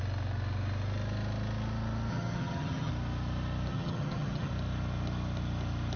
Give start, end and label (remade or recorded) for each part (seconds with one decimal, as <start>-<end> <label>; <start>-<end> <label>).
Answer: 0.0-2.1 recorded; 2.1-2.9 remade; 2.9-3.7 recorded; 3.7-4.5 remade; 4.5-6.0 recorded